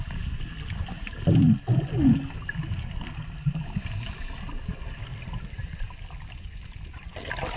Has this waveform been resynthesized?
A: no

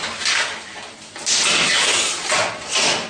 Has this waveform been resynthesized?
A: no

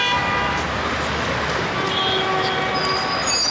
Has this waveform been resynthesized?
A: no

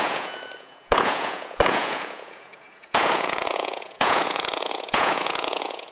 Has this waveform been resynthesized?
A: yes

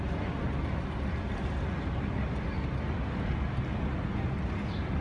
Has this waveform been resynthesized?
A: no